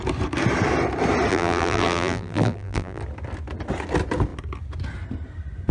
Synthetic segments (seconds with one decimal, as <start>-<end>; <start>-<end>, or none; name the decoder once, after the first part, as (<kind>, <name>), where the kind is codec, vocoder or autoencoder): 1.3-3.0 (vocoder, BigVGAN v2)